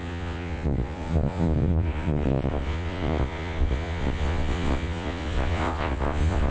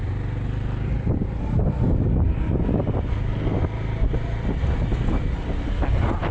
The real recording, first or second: second